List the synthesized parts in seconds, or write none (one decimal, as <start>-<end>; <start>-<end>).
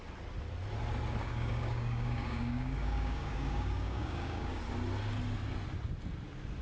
1.2-4.6